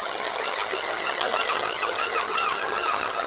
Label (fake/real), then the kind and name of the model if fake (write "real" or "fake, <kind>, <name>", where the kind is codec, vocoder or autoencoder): fake, vocoder, HiFi-GAN